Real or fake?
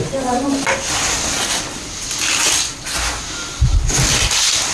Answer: real